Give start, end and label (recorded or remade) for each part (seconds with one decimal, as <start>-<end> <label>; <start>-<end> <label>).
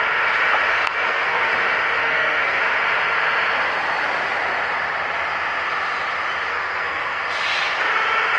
0.0-0.7 recorded; 0.7-1.5 remade; 1.5-2.0 recorded; 2.0-2.6 remade; 2.6-6.5 recorded; 6.5-7.2 remade; 7.2-8.4 recorded